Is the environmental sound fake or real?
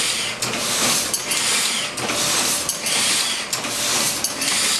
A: real